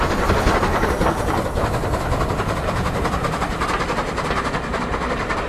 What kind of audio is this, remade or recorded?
recorded